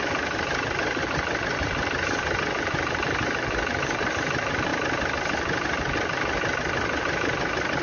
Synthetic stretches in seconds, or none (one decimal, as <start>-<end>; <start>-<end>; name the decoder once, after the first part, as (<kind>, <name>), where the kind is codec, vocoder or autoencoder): 0.0-4.7 (vocoder, BigVGAN v2)